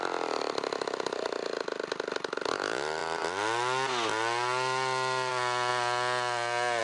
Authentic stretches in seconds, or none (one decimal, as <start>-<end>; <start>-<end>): 0.0-6.8